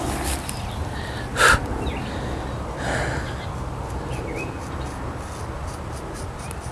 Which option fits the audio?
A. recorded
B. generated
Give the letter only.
A